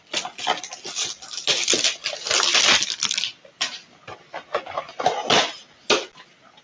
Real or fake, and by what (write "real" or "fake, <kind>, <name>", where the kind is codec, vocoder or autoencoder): real